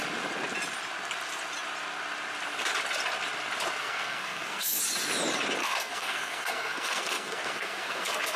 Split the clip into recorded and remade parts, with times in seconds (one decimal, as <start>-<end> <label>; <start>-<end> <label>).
0.0-3.8 recorded; 3.8-4.8 remade; 4.8-5.6 recorded; 5.6-8.4 remade